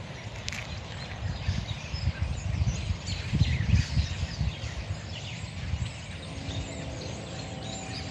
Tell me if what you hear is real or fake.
real